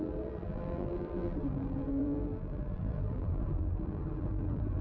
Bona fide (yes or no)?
no